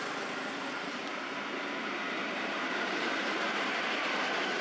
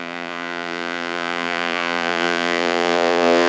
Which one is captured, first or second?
first